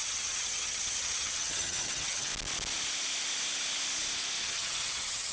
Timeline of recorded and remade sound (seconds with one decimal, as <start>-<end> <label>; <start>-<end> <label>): 0.0-2.3 remade; 2.3-4.4 recorded; 4.4-5.3 remade